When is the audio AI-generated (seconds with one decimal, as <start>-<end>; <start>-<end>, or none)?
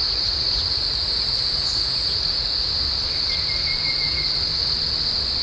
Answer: 0.0-2.7; 3.9-4.4